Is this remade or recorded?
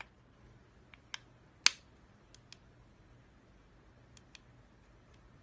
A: recorded